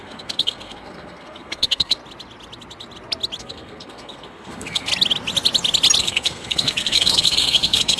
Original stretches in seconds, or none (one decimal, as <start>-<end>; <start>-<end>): 2.0-3.4; 4.9-6.0